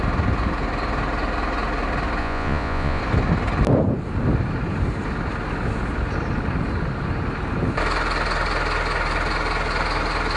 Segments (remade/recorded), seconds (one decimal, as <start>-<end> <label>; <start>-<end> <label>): 0.0-2.2 recorded; 2.2-3.0 remade; 3.0-10.4 recorded